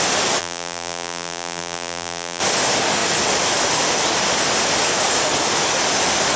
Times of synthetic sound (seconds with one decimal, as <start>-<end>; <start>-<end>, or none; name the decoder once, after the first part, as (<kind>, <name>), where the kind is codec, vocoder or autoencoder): 0.4-2.4 (vocoder, BigVGAN v2)